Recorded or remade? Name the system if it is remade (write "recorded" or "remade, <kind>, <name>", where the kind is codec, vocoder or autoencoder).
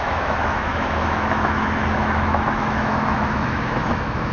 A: remade, autoencoder, DAC-VAE